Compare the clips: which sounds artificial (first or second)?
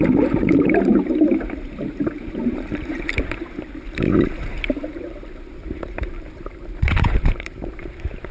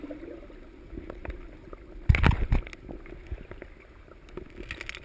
first